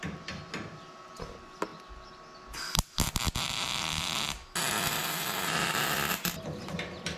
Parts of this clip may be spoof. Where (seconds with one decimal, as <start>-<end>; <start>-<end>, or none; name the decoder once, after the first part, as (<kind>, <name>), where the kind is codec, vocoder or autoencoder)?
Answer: none